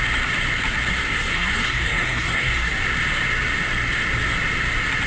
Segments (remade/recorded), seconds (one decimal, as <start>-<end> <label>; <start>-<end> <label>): 0.0-0.9 recorded; 0.9-2.7 remade; 2.7-5.1 recorded